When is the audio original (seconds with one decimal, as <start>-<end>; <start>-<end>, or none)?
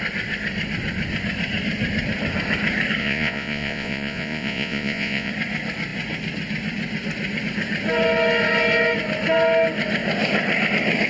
0.0-3.0; 5.3-11.1